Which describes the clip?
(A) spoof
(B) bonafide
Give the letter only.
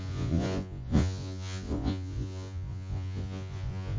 A